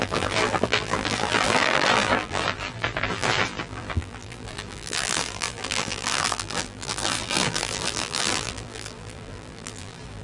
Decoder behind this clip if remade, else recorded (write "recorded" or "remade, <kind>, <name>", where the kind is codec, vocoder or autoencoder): remade, vocoder, BigVGAN v2